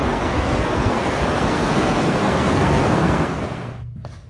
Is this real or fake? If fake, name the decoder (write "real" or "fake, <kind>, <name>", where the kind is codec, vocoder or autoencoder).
fake, codec, SNAC